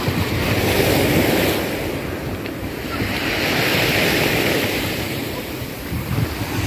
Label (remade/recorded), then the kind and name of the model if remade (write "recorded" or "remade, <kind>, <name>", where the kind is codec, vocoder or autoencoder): recorded